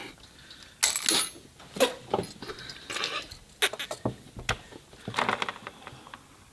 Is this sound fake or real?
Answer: real